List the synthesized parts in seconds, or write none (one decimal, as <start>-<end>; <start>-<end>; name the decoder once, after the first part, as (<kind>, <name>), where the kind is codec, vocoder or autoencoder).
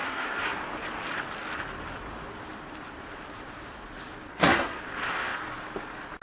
0.0-0.6 (codec, SNAC); 4.3-4.8